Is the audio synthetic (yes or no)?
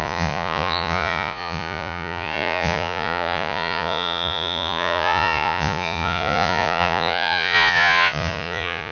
yes